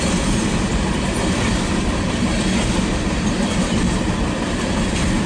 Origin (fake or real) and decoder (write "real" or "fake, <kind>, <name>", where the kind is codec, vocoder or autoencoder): real